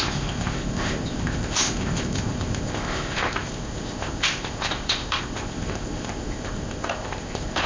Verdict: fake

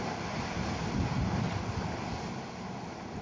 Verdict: real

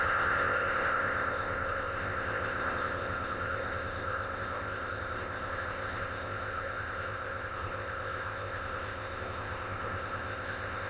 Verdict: fake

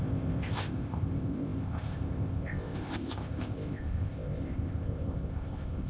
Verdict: fake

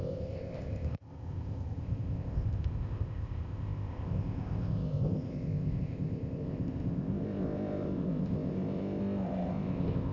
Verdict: fake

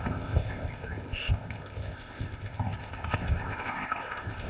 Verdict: fake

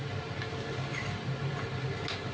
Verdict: real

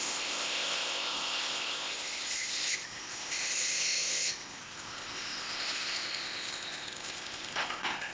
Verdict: fake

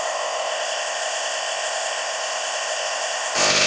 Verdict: fake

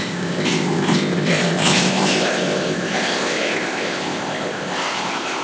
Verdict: fake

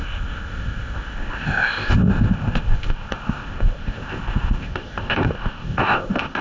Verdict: fake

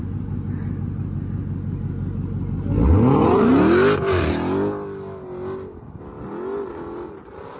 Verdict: real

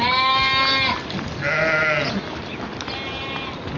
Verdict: real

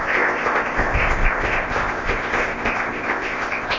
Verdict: fake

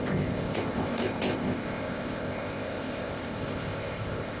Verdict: fake